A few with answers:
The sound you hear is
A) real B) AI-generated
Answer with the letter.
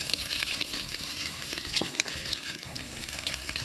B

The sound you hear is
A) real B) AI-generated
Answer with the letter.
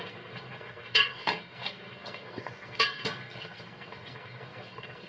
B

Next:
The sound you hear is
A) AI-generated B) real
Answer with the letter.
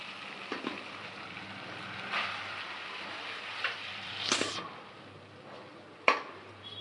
A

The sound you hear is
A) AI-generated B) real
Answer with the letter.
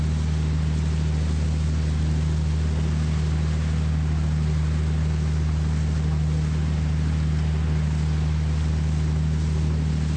B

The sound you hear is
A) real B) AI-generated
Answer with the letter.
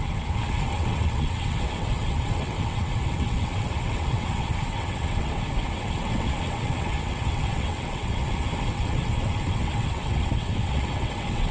B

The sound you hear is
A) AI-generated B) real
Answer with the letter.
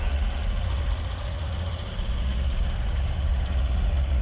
A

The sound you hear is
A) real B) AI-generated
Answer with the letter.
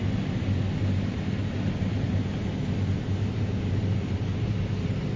A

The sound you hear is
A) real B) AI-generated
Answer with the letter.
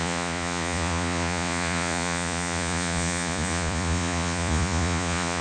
B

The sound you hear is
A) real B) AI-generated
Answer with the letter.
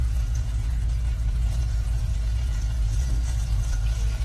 B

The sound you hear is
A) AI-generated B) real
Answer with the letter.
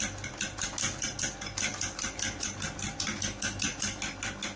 B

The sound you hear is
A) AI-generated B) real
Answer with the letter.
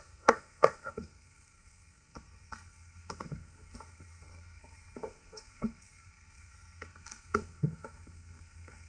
A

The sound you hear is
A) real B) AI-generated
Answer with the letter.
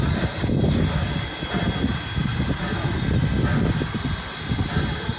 A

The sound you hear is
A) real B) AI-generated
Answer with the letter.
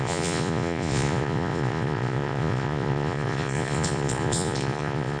B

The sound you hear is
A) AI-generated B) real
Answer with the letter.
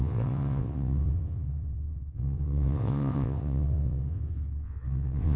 A